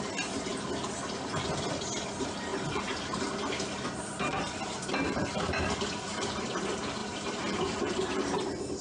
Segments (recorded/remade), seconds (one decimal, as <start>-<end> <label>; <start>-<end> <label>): 0.0-2.5 recorded; 2.5-6.4 remade; 6.4-7.0 recorded; 7.0-8.8 remade